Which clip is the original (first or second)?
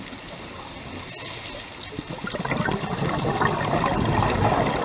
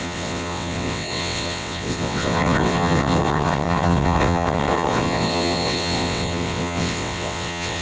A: first